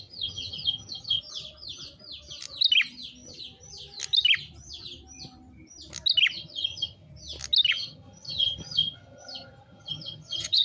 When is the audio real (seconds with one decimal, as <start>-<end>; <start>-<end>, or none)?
1.2-6.3; 7.1-7.7